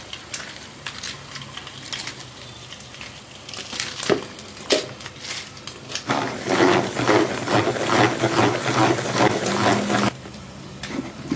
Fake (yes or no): no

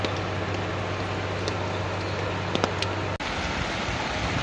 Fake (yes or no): no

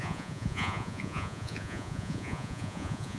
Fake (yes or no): yes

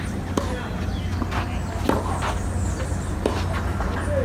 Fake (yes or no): no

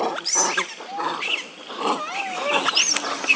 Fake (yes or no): no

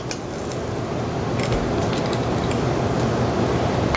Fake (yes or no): no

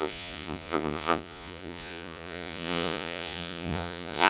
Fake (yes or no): yes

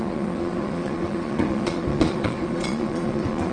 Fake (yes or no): yes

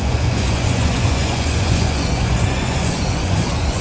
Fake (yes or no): yes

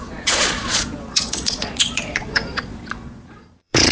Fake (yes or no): yes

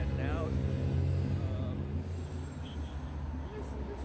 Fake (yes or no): no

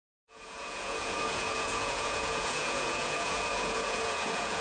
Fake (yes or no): yes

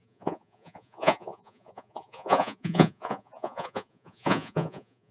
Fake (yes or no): yes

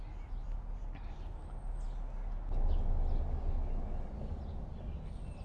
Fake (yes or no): no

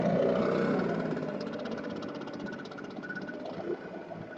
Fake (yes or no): no